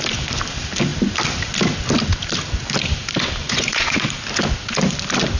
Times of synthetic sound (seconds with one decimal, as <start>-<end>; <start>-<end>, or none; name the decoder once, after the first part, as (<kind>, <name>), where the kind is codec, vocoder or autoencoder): 3.4-4.1 (vocoder, Vocos)